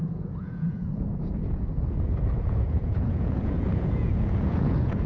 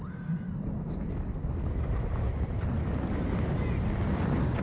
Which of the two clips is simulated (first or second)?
first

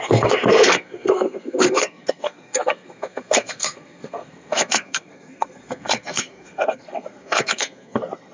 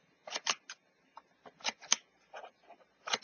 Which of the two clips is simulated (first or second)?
first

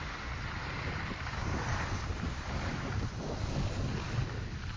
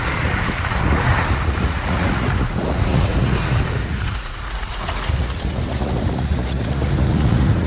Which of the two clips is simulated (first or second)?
second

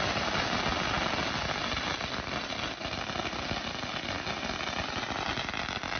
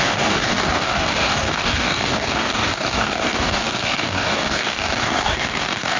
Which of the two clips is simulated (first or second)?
second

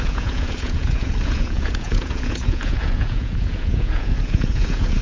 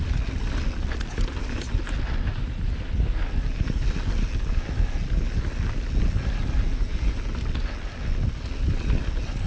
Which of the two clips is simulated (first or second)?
first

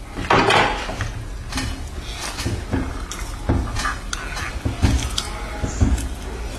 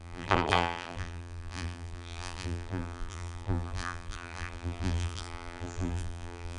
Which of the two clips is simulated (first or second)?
second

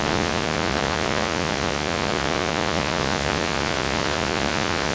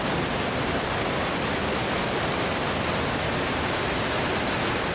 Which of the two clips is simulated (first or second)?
first